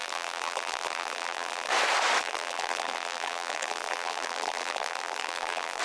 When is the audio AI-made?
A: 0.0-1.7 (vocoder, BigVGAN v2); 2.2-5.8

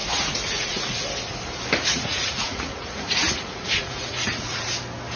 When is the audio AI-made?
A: 0.0-1.0 (vocoder, Vocos); 1.9-4.7

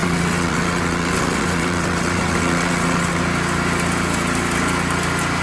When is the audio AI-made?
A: 0.0-3.2 (vocoder, WaveNeXt)

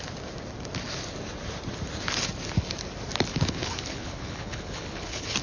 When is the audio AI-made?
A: 3.3-5.4 (codec, HILCodec)

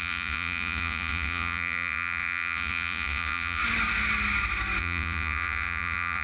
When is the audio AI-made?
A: 0.0-3.6 (vocoder, Vocos); 4.8-6.2

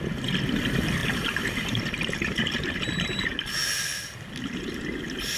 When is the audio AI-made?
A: 1.0-3.0 (vocoder, BigVGAN v2)